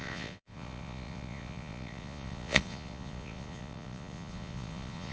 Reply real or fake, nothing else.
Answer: fake